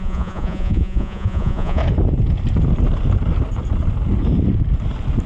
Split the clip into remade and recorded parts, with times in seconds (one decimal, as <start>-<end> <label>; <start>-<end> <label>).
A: 0.0-1.8 remade; 1.8-5.3 recorded